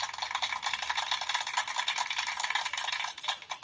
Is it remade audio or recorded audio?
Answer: recorded